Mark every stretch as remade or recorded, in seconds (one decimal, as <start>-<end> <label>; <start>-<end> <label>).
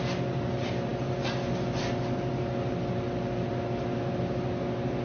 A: 0.0-5.0 recorded